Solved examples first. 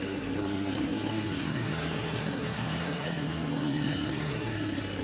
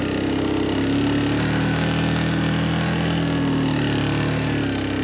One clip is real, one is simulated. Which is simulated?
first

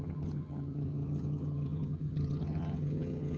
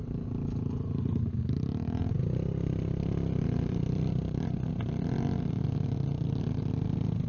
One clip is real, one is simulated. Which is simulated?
first